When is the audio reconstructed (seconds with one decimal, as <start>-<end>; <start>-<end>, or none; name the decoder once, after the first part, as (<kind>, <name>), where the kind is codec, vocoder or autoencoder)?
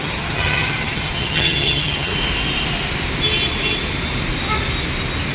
0.0-2.1 (vocoder, HiFi-GAN)